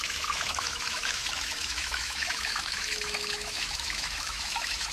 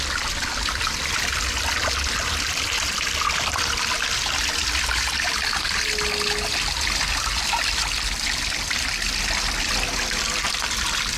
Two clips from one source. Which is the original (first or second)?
second